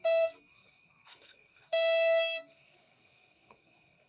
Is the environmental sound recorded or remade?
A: remade